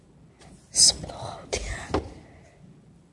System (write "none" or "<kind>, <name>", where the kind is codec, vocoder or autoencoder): none